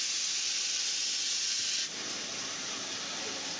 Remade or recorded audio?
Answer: recorded